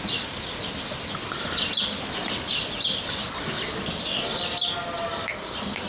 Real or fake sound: real